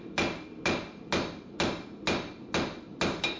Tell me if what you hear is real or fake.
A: real